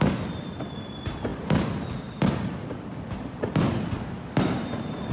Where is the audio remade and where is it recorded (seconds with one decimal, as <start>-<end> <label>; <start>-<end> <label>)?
0.0-5.1 recorded